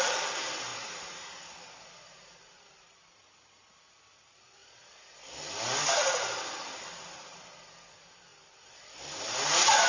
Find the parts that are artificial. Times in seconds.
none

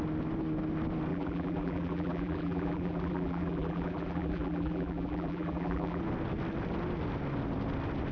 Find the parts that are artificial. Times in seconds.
1.1-6.0 (vocoder, BigVGAN v2)

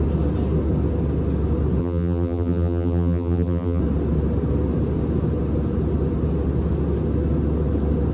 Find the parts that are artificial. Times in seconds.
1.8-3.8 (vocoder, BigVGAN v2)

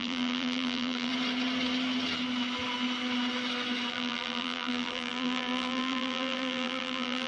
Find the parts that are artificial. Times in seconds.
0.0-1.1 (vocoder, BigVGAN v2); 3.9-7.3